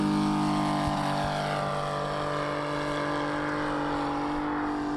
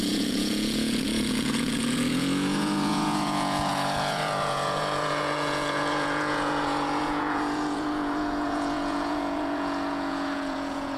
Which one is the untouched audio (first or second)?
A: first